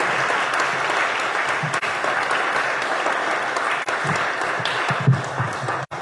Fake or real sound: real